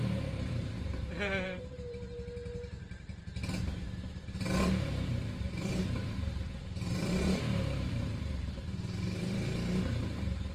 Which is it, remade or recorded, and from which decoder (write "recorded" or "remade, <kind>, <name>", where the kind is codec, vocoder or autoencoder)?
remade, vocoder, BigVGAN v2